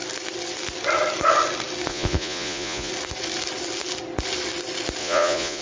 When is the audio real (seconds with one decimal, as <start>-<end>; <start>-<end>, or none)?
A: 0.0-1.9; 2.9-5.0